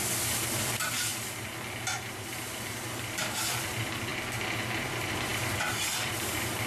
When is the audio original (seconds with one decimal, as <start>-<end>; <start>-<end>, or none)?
1.1-3.0; 4.1-4.8